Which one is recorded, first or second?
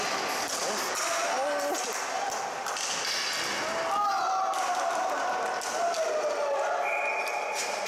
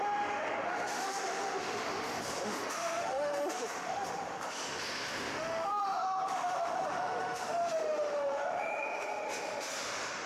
first